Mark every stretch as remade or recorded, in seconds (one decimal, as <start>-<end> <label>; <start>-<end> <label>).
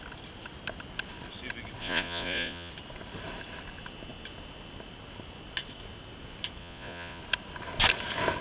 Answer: 0.0-1.8 recorded; 1.8-2.7 remade; 2.7-6.6 recorded; 6.6-7.2 remade; 7.2-8.4 recorded